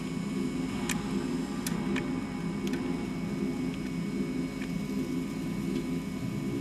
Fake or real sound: real